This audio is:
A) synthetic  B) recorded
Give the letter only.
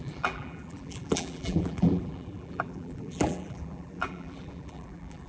A